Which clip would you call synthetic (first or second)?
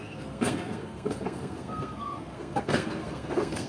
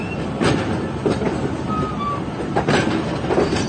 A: first